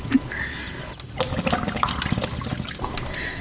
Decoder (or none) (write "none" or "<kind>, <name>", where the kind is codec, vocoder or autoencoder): none